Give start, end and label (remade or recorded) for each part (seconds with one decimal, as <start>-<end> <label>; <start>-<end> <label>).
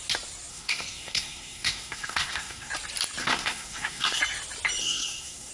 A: 0.0-0.5 recorded; 0.5-2.7 remade; 2.7-3.2 recorded; 3.2-4.2 remade; 4.2-4.8 recorded; 4.8-5.5 remade